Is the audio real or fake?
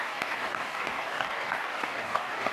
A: fake